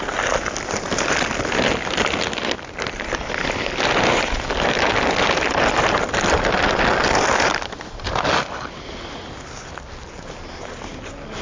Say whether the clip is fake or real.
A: real